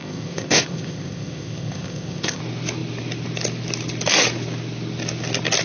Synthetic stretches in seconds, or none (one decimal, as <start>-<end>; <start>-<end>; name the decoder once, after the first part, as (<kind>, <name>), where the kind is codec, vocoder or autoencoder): 0.0-2.4 (codec, ZipCodec)